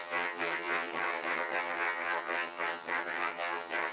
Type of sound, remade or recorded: remade